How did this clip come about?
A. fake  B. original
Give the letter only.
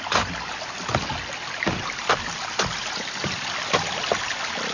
B